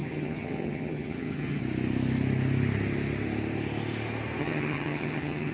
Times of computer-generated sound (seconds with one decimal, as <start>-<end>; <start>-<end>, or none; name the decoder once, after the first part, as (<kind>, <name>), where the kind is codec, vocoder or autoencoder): 0.0-1.6 (vocoder, HiFi-GAN); 4.4-5.5